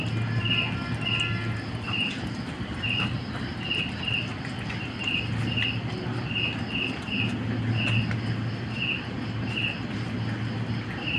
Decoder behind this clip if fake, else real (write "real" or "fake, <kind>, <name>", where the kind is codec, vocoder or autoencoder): real